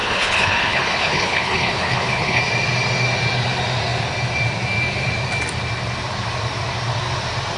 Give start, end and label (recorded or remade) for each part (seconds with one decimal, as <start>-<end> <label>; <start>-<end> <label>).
0.0-2.4 remade; 2.4-7.6 recorded